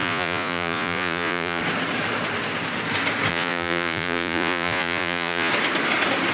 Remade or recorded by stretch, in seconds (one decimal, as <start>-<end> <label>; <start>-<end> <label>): 0.0-1.6 remade; 1.6-3.3 recorded; 3.3-5.5 remade; 5.5-6.3 recorded

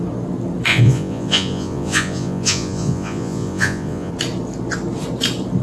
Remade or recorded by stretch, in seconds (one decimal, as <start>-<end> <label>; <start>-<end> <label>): 0.0-0.7 recorded; 0.7-4.1 remade; 4.1-5.6 recorded

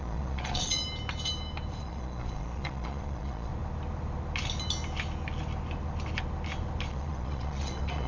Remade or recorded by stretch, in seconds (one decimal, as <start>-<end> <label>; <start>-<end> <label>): 0.0-0.8 remade; 0.8-1.8 recorded; 1.8-3.5 remade; 3.5-6.9 recorded; 6.9-8.1 remade

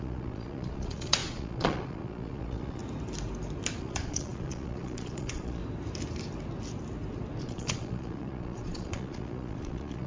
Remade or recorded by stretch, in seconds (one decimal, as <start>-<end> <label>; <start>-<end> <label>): 0.0-2.8 remade; 2.8-3.8 recorded; 3.8-5.6 remade; 5.6-7.4 recorded; 7.4-10.1 remade

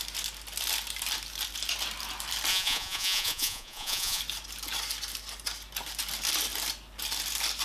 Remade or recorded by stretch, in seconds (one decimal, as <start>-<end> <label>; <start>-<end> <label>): 0.0-2.5 recorded; 2.5-4.2 remade; 4.2-7.6 recorded